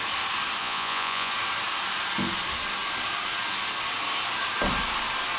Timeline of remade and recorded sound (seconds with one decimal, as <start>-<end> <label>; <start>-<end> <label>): 0.0-0.6 recorded; 0.6-1.3 remade; 1.3-5.4 recorded